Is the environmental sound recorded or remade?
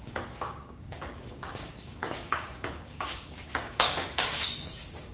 remade